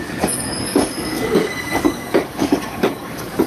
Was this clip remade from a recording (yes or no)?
yes